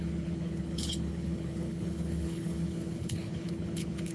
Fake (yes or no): yes